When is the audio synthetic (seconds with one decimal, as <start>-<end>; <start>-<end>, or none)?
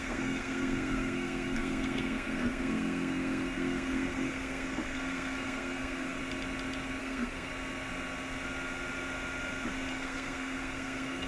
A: 0.0-6.2; 7.0-7.5; 9.9-11.3